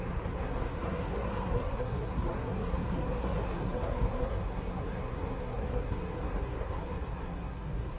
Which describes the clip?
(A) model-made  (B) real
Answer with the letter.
A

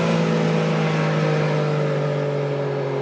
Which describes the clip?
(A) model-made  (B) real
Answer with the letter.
B